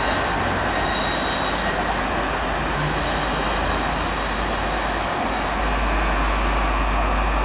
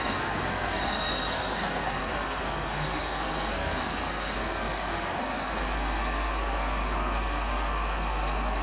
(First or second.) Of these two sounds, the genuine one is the first